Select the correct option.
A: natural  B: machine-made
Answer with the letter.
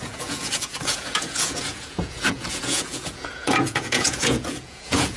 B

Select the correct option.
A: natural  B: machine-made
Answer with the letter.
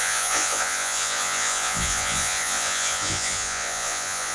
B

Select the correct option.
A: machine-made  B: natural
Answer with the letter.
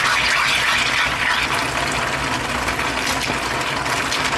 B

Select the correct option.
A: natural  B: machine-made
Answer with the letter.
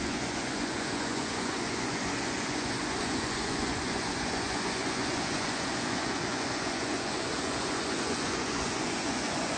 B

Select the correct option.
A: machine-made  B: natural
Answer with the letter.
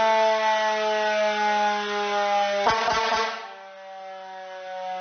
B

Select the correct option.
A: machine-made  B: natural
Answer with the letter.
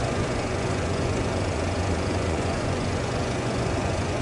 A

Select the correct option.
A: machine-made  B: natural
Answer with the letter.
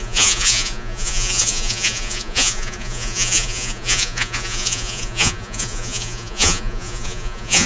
A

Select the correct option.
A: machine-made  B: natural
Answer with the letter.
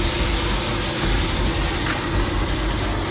B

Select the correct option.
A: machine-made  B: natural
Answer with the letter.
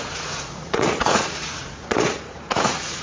A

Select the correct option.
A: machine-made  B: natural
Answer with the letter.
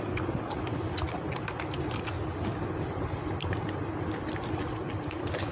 B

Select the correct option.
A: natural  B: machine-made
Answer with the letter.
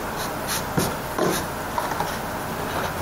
A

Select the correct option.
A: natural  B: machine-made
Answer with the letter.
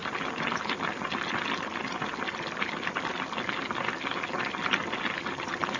A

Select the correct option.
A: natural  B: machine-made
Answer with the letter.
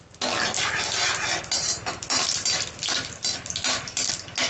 A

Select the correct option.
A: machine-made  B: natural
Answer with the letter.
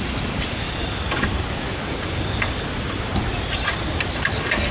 B